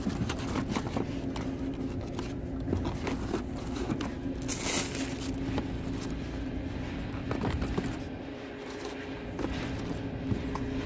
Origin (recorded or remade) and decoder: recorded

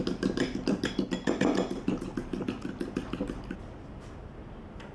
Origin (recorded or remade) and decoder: recorded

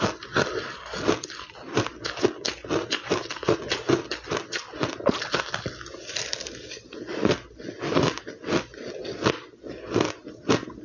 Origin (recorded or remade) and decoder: recorded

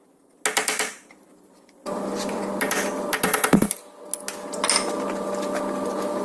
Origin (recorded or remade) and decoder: recorded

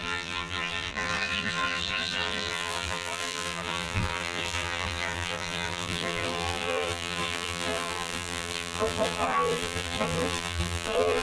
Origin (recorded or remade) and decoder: remade, vocoder, BigVGAN v2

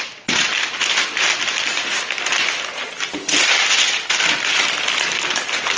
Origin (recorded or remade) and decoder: recorded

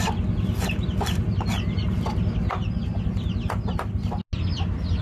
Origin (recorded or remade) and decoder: recorded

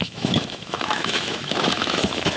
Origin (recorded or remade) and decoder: remade, autoencoder, DAC-VAE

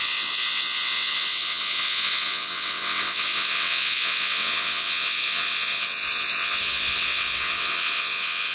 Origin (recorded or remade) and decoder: remade, vocoder, WaveNeXt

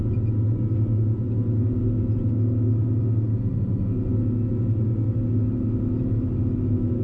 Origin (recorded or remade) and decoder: recorded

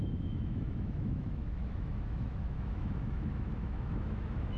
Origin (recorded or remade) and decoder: remade, autoencoder, DAC-VAE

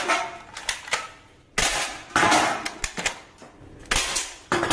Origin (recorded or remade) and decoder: recorded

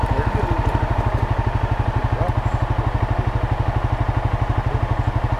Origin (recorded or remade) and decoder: recorded